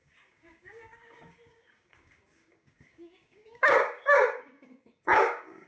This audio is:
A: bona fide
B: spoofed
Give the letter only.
B